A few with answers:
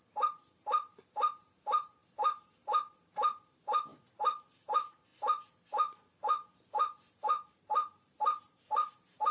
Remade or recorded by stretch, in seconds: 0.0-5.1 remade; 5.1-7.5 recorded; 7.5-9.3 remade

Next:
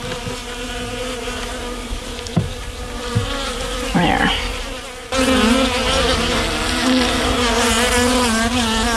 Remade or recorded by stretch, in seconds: 0.0-0.4 recorded; 0.4-4.2 remade; 4.2-9.0 recorded

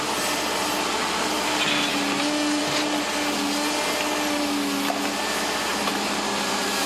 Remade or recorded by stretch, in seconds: 0.0-5.7 recorded; 5.7-6.9 remade

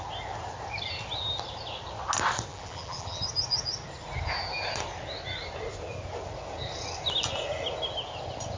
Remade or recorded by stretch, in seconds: 0.0-2.5 recorded; 2.5-3.2 remade; 3.2-8.6 recorded

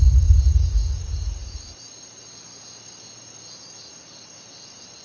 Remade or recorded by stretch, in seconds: 0.0-1.4 recorded; 1.4-2.2 remade; 2.2-5.0 recorded

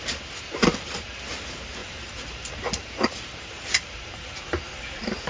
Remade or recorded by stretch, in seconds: 0.0-1.8 recorded; 1.8-5.3 remade

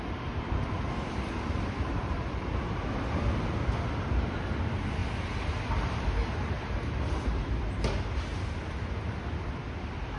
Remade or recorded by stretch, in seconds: 0.0-2.0 recorded; 2.0-3.0 remade; 3.0-8.3 recorded; 8.3-8.9 remade; 8.9-10.2 recorded

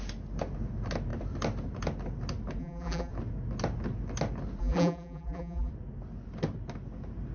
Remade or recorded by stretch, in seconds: 0.0-2.6 recorded; 2.6-3.1 remade; 3.1-4.6 recorded; 4.6-5.7 remade; 5.7-7.3 recorded